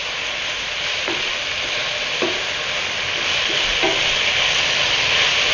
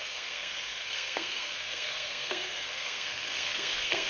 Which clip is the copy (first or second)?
second